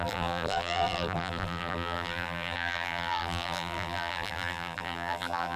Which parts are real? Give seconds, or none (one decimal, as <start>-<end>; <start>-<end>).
none